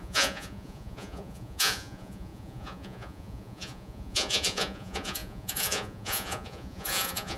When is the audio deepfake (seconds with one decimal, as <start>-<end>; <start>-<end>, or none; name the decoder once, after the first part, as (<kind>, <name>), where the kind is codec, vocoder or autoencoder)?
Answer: 0.0-7.4 (vocoder, Vocos)